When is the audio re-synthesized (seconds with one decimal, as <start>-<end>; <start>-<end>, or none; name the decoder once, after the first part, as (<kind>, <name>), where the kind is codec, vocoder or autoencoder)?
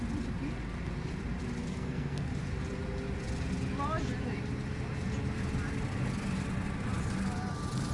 1.6-2.3 (codec, SNAC)